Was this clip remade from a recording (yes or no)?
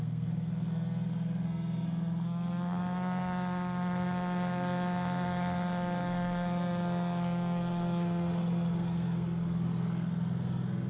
yes